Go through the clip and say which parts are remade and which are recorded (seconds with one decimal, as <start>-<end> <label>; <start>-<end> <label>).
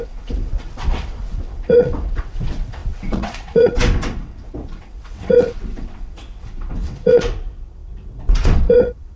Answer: 0.0-9.2 remade